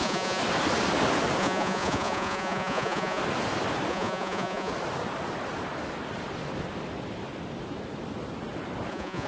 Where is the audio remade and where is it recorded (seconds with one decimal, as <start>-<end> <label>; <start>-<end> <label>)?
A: 0.0-0.4 remade; 0.4-1.4 recorded; 1.4-3.2 remade; 3.2-3.9 recorded; 3.9-4.7 remade; 4.7-8.9 recorded; 8.9-9.3 remade